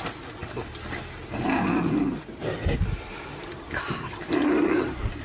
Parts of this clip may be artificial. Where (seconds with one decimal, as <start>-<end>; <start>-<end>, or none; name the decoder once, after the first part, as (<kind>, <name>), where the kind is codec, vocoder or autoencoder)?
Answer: none